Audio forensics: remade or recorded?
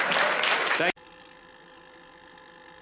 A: recorded